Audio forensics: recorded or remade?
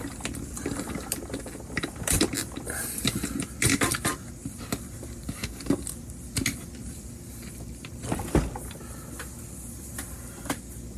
recorded